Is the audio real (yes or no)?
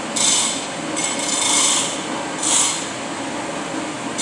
yes